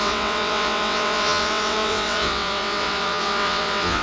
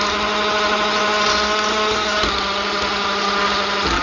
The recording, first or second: second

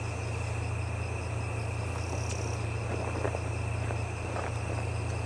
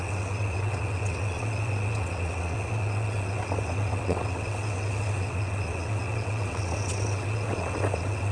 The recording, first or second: first